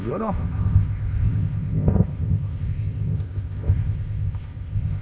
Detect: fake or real fake